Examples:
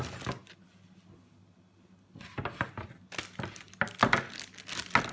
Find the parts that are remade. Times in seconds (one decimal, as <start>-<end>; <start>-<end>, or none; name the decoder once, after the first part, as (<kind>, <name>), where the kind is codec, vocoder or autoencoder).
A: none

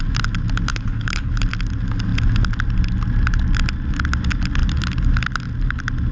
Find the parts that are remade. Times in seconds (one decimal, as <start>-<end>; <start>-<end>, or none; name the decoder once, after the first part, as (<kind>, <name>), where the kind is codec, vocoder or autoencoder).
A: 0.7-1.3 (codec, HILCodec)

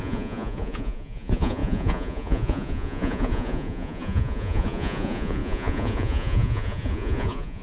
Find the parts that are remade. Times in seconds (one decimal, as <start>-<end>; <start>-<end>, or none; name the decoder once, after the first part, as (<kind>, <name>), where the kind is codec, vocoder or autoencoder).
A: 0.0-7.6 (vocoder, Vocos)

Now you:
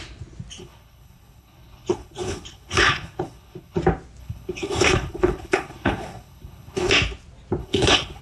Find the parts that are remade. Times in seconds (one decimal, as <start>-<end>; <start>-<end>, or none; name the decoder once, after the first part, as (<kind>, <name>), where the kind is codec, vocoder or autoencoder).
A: 0.6-3.8 (codec, HILCodec); 4.2-6.9; 7.6-8.2

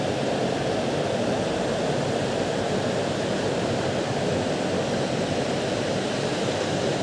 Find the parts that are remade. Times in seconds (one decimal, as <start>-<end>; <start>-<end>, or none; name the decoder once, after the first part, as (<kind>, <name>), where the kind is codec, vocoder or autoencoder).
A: 0.0-0.4 (vocoder, BigVGAN v2); 3.0-7.0

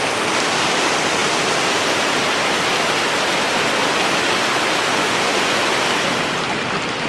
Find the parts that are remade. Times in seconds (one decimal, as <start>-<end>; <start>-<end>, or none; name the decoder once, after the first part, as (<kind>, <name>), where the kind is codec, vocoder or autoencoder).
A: 4.9-5.6 (vocoder, Vocos)

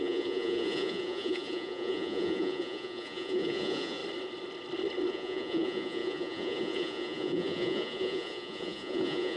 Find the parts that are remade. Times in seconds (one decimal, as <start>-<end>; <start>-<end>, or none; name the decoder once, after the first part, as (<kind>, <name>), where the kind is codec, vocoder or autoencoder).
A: 0.0-4.0 (vocoder, Vocos); 5.1-9.4

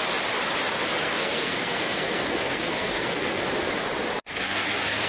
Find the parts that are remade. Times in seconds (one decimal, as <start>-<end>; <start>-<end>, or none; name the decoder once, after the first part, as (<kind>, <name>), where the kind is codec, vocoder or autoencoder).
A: 1.0-3.4 (codec, SNAC); 4.2-5.1